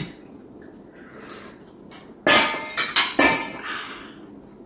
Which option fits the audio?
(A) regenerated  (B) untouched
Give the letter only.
B